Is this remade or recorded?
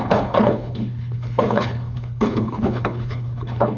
remade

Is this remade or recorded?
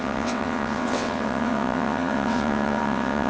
remade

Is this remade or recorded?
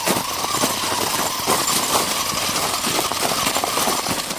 recorded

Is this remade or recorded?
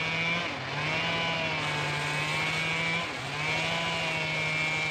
recorded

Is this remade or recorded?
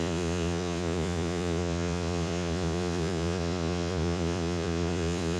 remade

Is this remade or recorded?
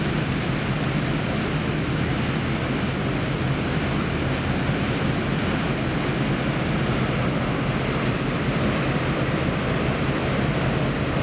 recorded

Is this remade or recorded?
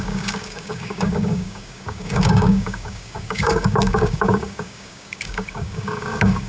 remade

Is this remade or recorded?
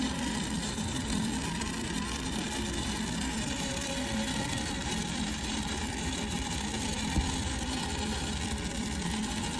remade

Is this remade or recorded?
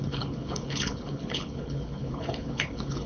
remade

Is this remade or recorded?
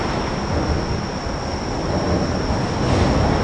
recorded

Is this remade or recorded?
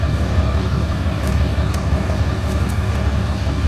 remade